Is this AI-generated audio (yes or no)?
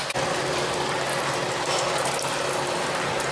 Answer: no